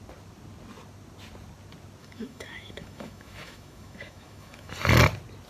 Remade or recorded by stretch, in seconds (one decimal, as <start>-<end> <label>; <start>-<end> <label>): 0.0-2.0 recorded; 2.0-4.7 remade; 4.7-5.5 recorded